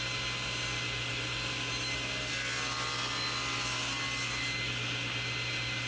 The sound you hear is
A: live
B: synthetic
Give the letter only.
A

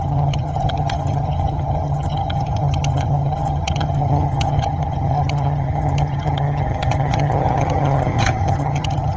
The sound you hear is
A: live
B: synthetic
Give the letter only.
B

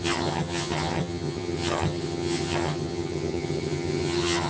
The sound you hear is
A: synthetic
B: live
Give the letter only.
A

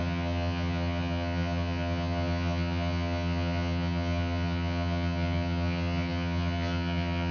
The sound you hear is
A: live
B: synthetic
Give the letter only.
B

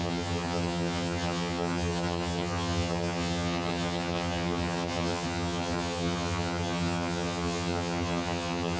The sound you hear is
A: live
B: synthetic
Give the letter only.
B